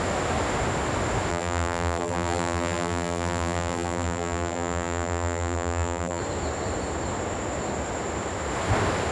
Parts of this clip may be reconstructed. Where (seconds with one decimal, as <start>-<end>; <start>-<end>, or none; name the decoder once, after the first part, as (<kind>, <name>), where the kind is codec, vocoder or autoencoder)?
1.3-6.2 (vocoder, BigVGAN v2)